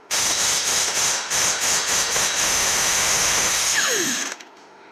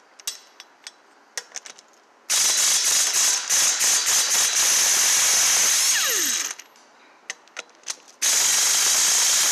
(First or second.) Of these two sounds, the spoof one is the first